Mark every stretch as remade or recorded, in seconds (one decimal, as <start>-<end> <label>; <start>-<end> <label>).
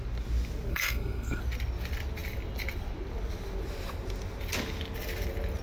0.0-0.7 recorded; 0.7-1.4 remade; 1.4-5.6 recorded